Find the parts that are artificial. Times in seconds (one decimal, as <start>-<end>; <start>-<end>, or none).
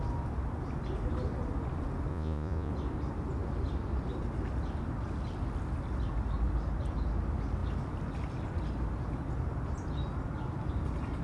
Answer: 2.1-2.7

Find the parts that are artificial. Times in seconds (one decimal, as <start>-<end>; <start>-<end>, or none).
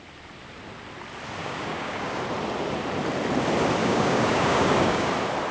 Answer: 1.4-2.2; 3.8-5.1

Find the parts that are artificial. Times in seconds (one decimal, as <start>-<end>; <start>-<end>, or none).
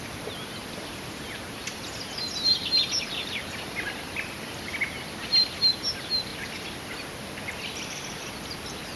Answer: 0.6-1.2; 1.6-4.8; 6.3-6.9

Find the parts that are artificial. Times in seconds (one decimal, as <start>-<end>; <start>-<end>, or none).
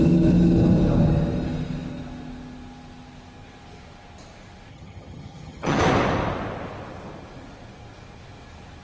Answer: 4.7-5.8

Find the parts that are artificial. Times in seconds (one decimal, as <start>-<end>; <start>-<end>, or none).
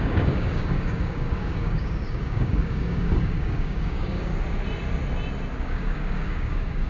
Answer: 0.0-4.3; 5.6-6.9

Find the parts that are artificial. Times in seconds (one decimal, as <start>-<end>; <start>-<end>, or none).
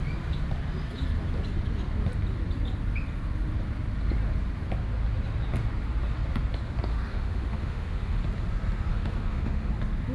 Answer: 6.9-8.2; 8.9-9.7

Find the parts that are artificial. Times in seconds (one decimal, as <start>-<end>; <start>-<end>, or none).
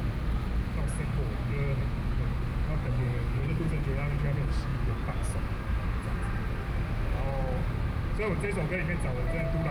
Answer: 2.8-3.7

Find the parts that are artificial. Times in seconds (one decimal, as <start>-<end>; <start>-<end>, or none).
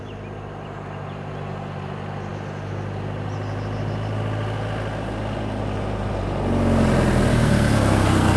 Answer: 7.3-8.4